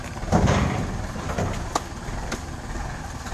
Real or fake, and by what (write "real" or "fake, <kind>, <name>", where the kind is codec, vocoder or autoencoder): real